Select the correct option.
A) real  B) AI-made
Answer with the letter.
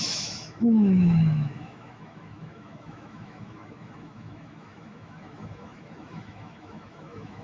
B